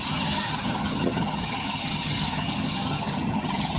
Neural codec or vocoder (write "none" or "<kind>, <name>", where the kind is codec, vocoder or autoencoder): vocoder, HiFi-GAN